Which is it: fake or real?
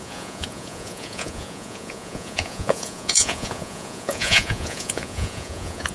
fake